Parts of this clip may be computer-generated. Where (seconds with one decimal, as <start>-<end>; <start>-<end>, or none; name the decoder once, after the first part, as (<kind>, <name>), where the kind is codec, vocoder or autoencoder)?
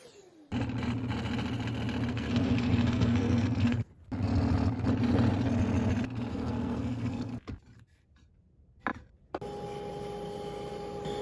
2.1-3.9 (codec, SNAC); 6.3-7.3